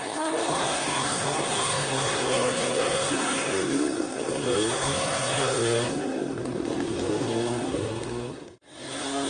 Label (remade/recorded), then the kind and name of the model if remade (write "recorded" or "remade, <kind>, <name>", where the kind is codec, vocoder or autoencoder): remade, codec, SNAC